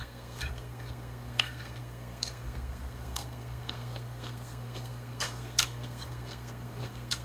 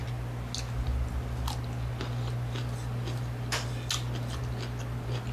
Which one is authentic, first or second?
second